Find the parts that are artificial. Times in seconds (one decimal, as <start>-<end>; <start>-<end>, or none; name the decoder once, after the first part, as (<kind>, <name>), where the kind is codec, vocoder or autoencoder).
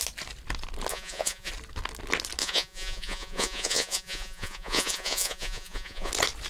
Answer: 0.9-1.5 (vocoder, Vocos); 2.4-6.1